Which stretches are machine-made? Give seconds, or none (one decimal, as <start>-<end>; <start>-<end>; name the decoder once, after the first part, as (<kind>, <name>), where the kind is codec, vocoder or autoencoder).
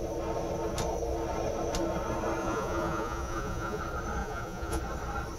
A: 2.4-3.8 (vocoder, Vocos); 4.2-4.8